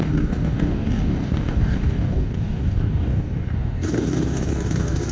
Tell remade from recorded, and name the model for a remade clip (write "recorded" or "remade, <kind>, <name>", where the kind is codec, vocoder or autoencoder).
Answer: remade, codec, DAC